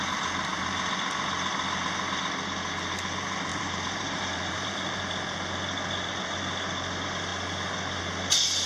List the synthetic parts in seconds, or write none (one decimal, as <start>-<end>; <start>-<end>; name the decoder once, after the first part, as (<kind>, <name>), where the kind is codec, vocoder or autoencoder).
3.5-5.0 (vocoder, BigVGAN v2)